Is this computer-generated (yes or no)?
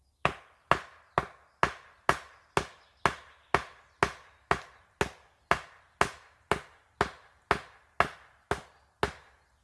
no